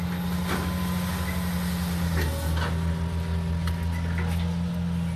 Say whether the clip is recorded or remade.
recorded